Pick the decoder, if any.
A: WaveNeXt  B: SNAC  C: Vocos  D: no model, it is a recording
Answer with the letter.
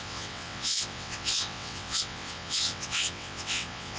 A